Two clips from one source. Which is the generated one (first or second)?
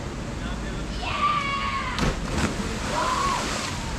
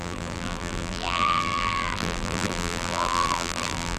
second